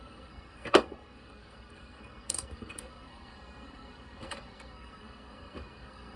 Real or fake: fake